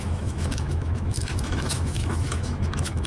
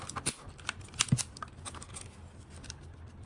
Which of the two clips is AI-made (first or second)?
first